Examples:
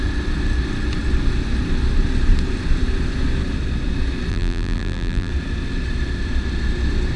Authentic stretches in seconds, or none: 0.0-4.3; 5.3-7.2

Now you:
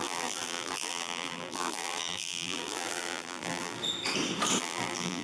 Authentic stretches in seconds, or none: 3.8-4.6